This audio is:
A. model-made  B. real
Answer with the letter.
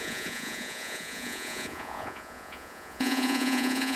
A